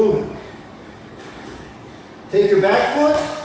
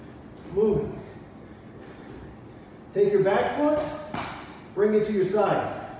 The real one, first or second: second